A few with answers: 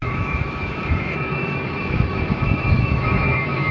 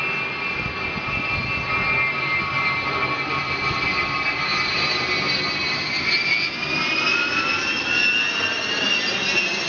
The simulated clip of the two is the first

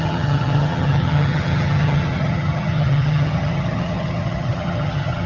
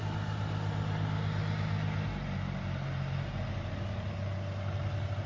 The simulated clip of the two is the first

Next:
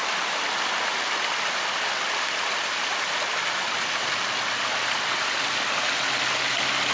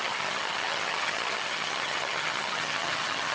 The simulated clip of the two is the second